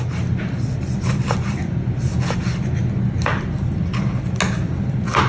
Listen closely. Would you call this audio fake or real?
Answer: real